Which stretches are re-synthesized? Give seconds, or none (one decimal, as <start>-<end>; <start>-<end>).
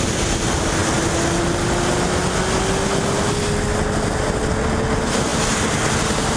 none